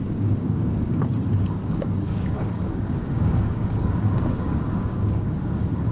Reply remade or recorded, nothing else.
remade